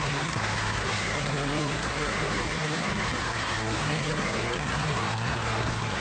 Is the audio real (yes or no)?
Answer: no